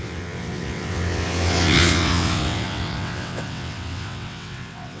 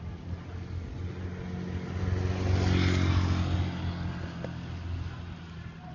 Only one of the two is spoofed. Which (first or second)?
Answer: first